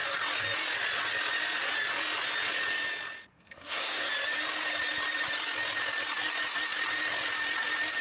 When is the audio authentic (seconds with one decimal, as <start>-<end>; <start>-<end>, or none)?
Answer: 0.0-3.3; 4.1-8.0